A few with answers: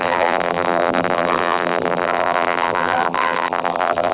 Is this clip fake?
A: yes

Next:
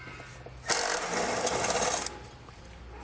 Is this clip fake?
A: no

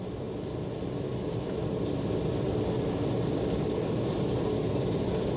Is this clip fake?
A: no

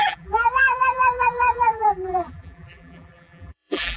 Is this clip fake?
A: yes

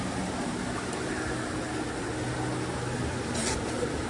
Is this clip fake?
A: no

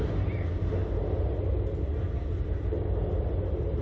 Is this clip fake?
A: yes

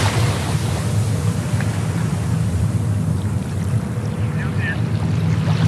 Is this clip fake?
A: no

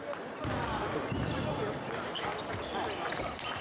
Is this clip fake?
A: no